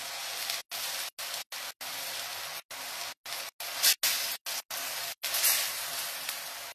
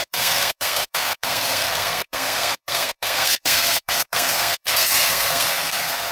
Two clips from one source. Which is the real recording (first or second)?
first